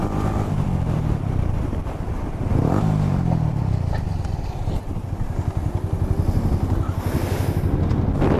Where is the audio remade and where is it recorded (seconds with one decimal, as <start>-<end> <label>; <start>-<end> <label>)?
0.0-5.0 remade; 5.0-8.4 recorded